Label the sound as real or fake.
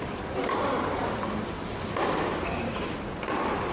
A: real